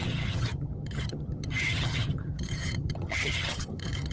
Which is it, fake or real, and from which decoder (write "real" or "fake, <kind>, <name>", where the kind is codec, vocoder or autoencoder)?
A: fake, vocoder, HiFi-GAN